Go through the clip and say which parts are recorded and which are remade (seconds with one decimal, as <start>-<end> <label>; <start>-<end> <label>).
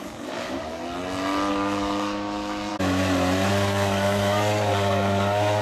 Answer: 0.0-0.8 remade; 0.8-1.5 recorded; 1.5-2.7 remade; 2.7-3.5 recorded; 3.5-5.6 remade